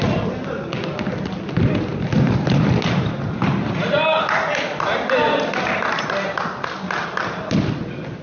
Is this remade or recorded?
recorded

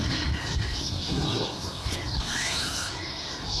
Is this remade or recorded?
remade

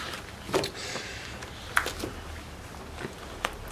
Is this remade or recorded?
remade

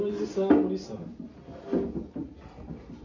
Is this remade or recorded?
recorded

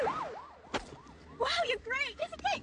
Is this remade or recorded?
recorded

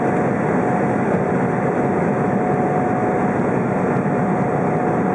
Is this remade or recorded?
recorded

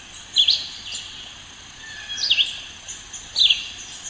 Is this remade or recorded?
recorded